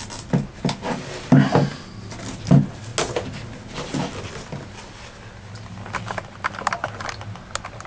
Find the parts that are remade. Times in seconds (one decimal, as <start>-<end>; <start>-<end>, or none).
none